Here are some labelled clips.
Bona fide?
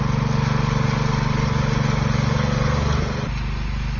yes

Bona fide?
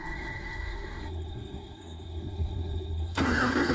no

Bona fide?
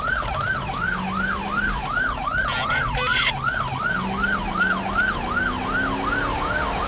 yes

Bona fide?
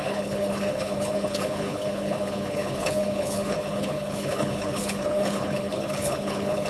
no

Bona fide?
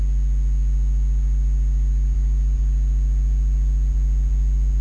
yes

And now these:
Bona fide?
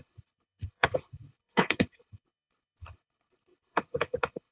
no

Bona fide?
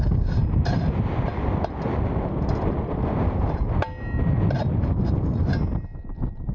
yes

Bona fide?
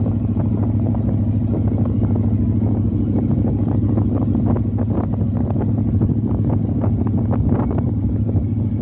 yes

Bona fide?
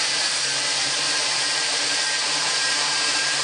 no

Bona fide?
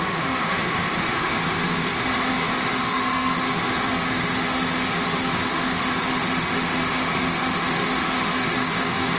no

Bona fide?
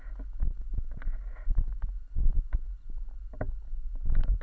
yes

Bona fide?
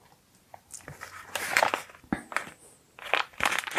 yes